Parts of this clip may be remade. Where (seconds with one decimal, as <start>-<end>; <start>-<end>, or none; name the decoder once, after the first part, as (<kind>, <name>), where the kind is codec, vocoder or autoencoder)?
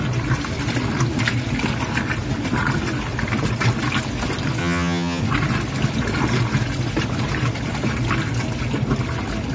4.6-5.2 (vocoder, HiFi-GAN)